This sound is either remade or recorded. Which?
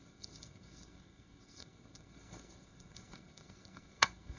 remade